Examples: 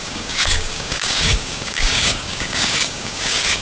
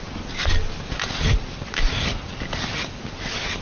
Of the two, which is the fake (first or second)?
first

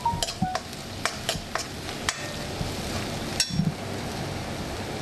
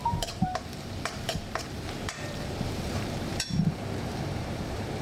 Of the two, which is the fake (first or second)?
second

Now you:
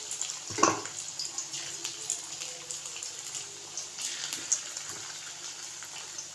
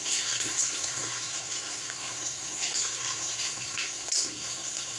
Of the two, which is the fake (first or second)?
second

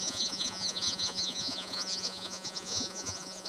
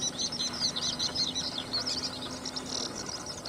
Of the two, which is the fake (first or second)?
first